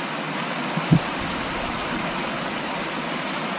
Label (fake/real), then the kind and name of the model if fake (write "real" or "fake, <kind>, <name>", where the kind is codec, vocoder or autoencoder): real